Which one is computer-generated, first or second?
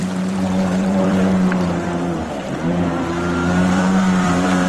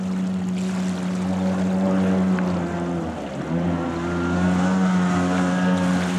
first